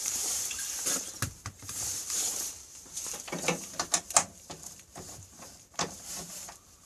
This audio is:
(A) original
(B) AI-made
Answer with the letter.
B